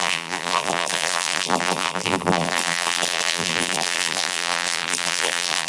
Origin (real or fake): fake